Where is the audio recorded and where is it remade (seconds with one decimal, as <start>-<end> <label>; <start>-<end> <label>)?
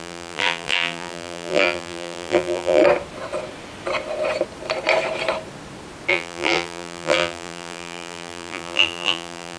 0.0-2.8 remade; 2.8-6.1 recorded; 6.1-9.6 remade